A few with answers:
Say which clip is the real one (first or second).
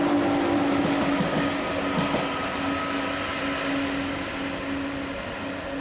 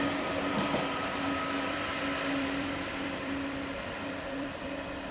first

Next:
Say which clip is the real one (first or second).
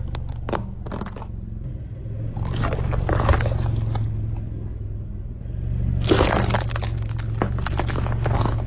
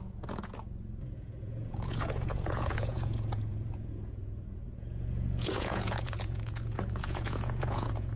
first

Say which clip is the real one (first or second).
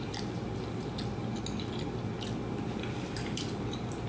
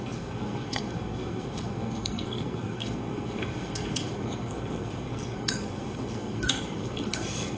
first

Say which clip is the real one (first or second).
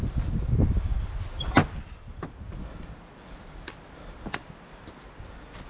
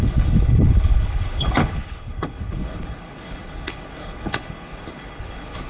first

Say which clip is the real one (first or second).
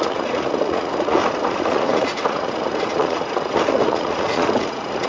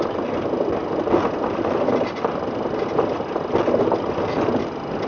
second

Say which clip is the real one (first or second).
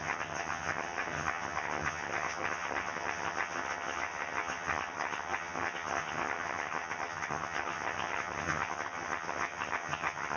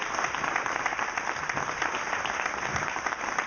second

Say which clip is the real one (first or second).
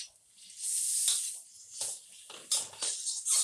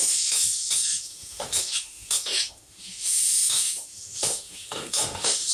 first